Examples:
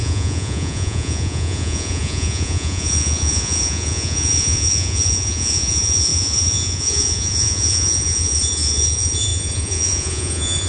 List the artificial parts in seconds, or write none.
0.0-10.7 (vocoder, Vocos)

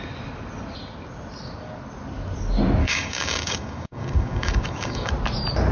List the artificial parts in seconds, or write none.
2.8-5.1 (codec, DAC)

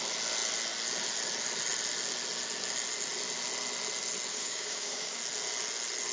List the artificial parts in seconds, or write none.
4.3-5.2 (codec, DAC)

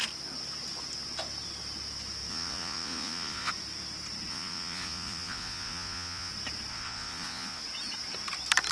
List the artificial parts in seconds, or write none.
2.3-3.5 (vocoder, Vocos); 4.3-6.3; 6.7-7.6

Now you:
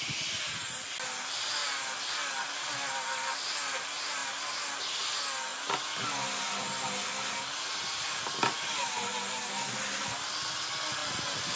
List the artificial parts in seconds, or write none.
11.0-11.6 (vocoder, BigVGAN v2)